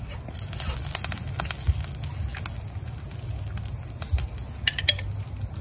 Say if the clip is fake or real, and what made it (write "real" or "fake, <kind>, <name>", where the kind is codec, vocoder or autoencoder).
real